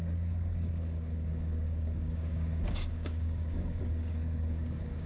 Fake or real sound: fake